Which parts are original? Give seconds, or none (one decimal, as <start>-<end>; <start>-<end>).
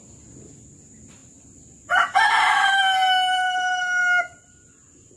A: 0.0-5.2